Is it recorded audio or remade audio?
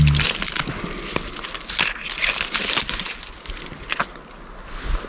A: recorded